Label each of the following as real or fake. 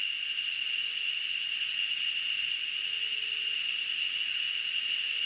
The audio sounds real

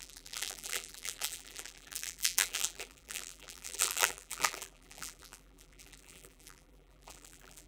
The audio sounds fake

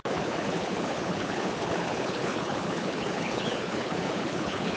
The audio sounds fake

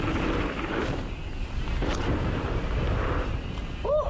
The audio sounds real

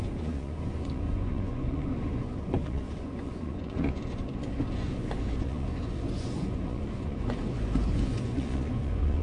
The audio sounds fake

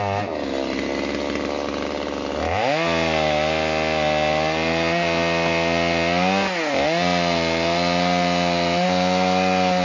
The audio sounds real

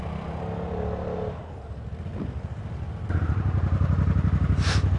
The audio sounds real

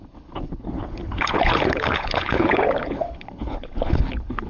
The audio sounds fake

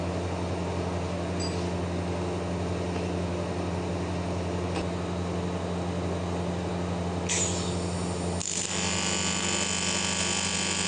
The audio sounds real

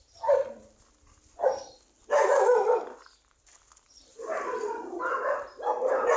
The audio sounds real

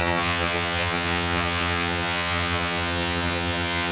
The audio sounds fake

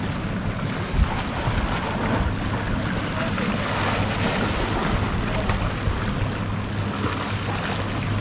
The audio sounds real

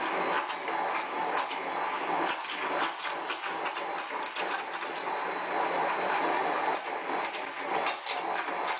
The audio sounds real